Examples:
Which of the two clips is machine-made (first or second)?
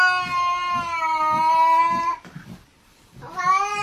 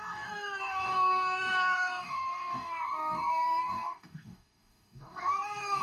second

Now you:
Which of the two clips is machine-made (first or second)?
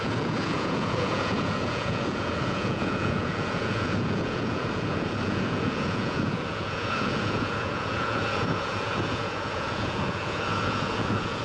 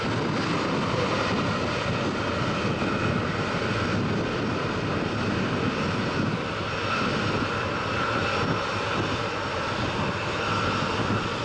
first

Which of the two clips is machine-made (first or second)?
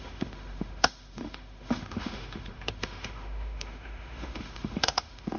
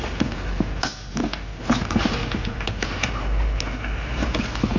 first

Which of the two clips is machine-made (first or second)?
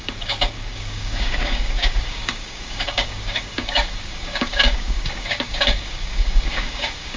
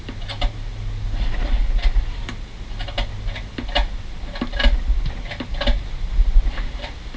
first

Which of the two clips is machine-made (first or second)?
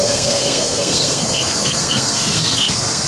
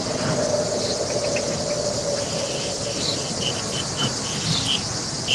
first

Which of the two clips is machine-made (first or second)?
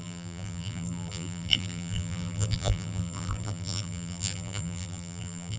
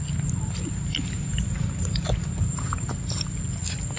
first